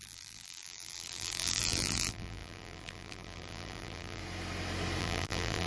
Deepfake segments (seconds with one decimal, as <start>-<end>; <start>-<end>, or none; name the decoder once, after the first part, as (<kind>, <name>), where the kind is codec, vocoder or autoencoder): 0.0-4.2 (vocoder, BigVGAN v2); 5.0-5.7